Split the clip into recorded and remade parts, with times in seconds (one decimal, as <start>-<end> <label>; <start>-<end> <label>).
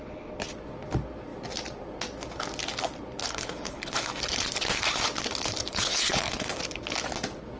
0.0-3.2 recorded; 3.2-4.1 remade; 4.1-5.7 recorded; 5.7-6.6 remade; 6.6-7.6 recorded